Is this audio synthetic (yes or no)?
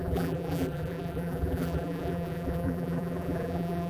yes